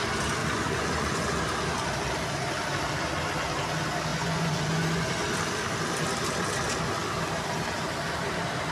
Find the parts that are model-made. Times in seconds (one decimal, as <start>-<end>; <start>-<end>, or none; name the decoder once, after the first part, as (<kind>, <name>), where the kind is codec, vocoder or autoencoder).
0.4-1.4 (vocoder, Vocos); 4.1-5.1